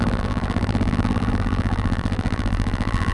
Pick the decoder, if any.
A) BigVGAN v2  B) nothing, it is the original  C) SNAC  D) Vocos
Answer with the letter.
A